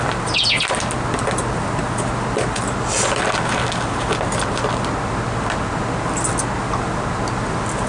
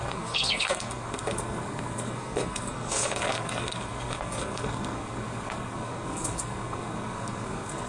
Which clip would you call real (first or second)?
first